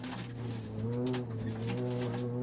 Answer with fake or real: real